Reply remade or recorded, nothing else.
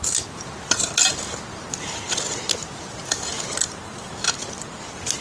recorded